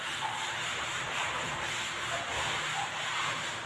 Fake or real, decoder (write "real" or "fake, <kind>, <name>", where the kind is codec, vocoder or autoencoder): fake, vocoder, BigVGAN v2